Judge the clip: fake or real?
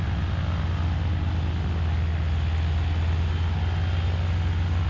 real